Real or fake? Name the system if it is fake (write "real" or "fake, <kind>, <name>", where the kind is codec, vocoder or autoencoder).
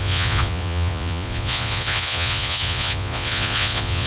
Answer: fake, vocoder, Vocos